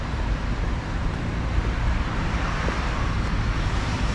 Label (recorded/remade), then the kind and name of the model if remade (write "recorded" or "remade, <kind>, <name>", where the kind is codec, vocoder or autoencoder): remade, vocoder, BigVGAN v2